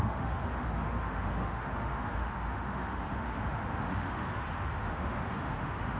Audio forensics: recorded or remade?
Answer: remade